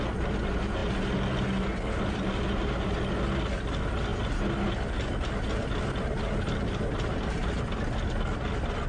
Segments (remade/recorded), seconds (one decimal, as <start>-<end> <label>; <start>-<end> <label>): 0.0-8.9 recorded